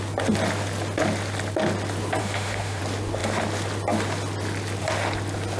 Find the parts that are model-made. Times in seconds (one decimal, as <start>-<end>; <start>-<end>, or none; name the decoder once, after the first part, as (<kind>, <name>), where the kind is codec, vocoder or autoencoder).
2.2-2.8 (autoencoder, DAC-VAE)

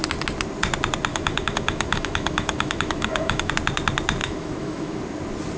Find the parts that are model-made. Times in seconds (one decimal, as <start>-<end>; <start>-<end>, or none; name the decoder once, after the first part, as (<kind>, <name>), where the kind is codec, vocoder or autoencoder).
1.1-3.5 (autoencoder, DAC-VAE); 4.2-5.0

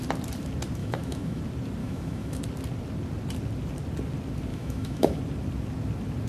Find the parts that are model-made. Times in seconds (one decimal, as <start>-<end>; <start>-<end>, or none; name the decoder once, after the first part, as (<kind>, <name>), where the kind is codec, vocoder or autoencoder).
0.8-1.4 (autoencoder, DAC-VAE); 1.8-2.4; 4.5-5.2

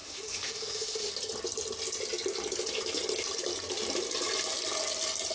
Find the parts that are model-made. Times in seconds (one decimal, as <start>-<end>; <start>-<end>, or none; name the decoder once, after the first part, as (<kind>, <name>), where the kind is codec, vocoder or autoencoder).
0.0-1.1 (autoencoder, DAC-VAE)

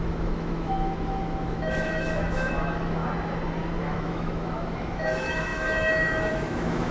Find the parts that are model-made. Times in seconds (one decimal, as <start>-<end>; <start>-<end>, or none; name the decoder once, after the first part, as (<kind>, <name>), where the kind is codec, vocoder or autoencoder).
0.0-3.0 (autoencoder, DAC-VAE); 3.8-6.9

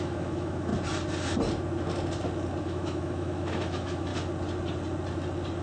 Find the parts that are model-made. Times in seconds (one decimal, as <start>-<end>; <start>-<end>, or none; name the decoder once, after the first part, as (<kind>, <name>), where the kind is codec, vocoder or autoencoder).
0.0-0.7 (autoencoder, DAC-VAE); 2.6-4.1